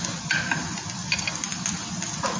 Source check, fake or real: real